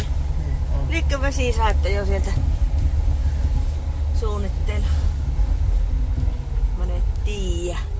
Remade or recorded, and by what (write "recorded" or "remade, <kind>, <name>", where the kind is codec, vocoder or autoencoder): recorded